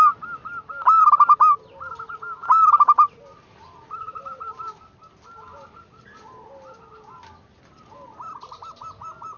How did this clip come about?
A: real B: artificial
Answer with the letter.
A